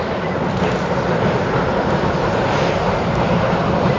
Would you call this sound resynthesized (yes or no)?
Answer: no